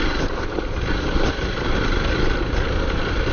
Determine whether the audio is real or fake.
real